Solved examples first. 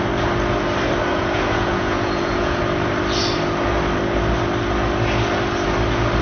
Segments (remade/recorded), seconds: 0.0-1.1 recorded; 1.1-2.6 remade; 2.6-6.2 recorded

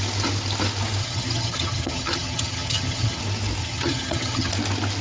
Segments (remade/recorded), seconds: 0.0-1.0 recorded; 1.0-3.2 remade; 3.2-3.6 recorded; 3.6-4.5 remade; 4.5-5.0 recorded